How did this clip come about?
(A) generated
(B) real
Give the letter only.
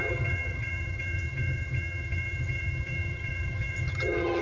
A